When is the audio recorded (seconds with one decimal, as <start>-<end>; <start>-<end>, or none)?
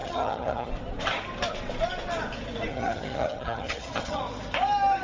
0.7-2.7; 4.2-5.0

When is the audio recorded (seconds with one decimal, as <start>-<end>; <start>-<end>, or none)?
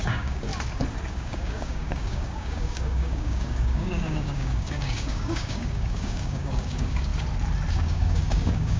0.5-1.1; 7.1-7.7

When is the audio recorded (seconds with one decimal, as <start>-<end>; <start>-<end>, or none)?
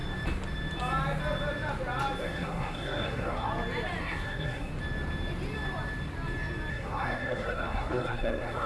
0.0-2.2; 3.5-4.0; 4.7-6.7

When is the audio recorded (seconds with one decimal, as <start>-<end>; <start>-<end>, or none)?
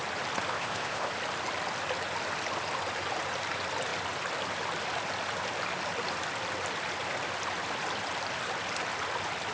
0.0-0.5; 1.1-9.5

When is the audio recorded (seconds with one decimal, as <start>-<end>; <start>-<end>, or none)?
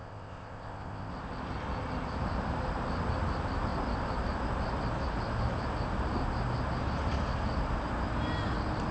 1.1-8.9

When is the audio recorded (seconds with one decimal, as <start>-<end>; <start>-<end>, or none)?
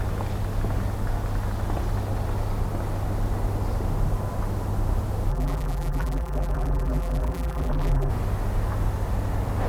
0.0-5.3; 8.1-9.7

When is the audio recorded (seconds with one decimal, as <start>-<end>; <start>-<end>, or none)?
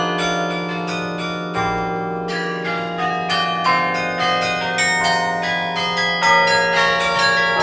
0.0-2.3; 3.1-7.6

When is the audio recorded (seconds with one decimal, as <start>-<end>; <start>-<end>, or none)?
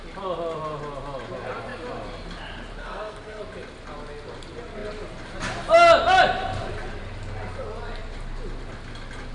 0.0-2.8; 3.4-9.3